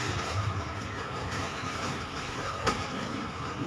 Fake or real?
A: fake